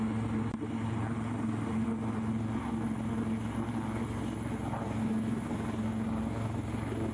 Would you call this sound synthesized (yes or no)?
no